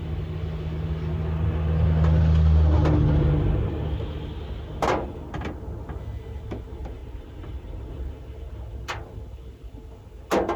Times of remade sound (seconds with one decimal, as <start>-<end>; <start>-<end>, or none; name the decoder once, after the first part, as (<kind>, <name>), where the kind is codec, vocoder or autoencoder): 7.0-7.9 (vocoder, BigVGAN v2)